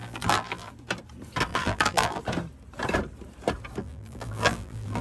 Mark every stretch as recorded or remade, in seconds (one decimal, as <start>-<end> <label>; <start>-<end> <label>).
0.0-0.7 remade; 0.7-1.5 recorded; 1.5-2.2 remade; 2.2-3.8 recorded; 3.8-5.0 remade